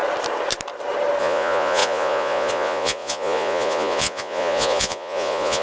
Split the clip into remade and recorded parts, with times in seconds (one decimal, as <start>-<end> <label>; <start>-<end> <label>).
0.0-1.2 recorded; 1.2-5.6 remade